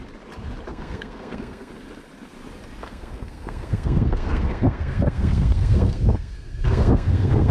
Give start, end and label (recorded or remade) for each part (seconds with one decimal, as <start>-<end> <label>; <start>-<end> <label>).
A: 0.0-0.7 recorded; 0.7-1.7 remade; 1.7-2.8 recorded; 2.8-7.5 remade

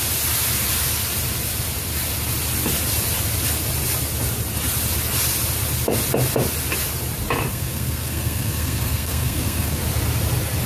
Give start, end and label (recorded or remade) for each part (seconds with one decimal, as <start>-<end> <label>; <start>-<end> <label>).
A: 0.0-7.5 recorded; 7.5-9.8 remade; 9.8-10.7 recorded